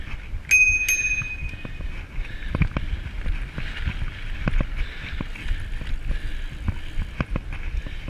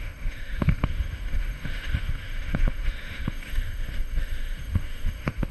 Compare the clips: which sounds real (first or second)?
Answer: first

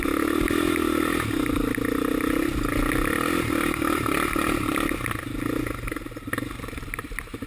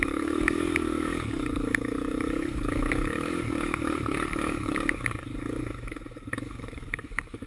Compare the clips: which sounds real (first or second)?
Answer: first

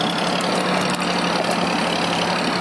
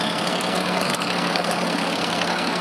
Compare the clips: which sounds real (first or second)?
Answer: first